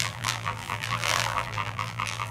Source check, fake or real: fake